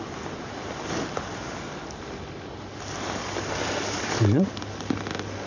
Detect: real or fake real